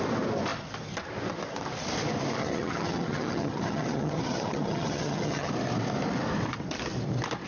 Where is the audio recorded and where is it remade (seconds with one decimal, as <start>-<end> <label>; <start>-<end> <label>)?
0.0-2.4 recorded; 2.4-5.5 remade; 5.5-7.5 recorded